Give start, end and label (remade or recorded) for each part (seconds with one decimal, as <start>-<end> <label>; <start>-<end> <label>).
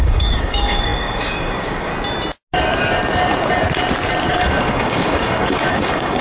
0.0-1.9 remade; 1.9-4.3 recorded; 4.3-6.2 remade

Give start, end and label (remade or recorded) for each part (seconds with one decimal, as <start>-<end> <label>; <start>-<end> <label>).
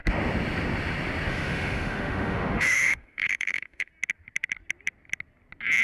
0.0-1.3 recorded; 1.3-3.9 remade; 3.9-5.8 recorded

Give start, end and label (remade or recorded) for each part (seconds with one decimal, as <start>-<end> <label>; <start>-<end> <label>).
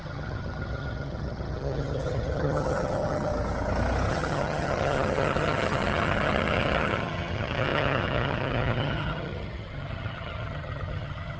0.0-3.3 remade; 3.3-4.1 recorded; 4.1-11.4 remade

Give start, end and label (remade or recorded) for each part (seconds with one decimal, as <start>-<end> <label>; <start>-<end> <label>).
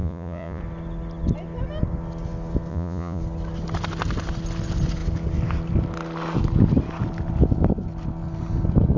0.0-0.6 remade; 0.6-2.7 recorded; 2.7-3.2 remade; 3.2-9.0 recorded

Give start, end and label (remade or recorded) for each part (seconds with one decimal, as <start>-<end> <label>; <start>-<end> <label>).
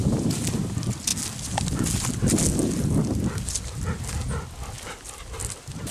0.0-5.9 recorded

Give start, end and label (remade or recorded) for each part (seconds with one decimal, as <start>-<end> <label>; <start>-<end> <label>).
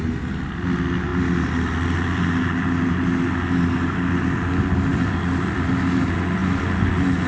0.0-4.9 recorded; 4.9-5.7 remade; 5.7-7.3 recorded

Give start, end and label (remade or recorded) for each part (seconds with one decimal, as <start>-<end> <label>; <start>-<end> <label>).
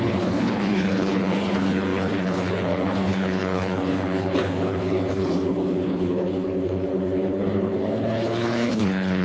0.0-9.2 remade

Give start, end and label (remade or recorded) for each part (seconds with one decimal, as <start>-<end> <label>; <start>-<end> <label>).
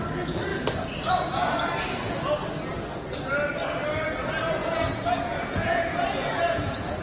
0.0-4.6 recorded; 4.6-7.0 remade